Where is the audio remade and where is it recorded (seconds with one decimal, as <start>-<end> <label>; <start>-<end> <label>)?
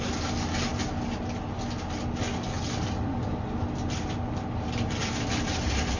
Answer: 0.0-6.0 recorded